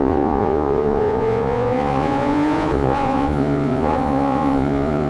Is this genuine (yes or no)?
no